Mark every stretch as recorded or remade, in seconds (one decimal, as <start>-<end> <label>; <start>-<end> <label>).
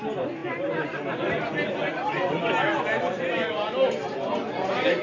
0.0-5.0 recorded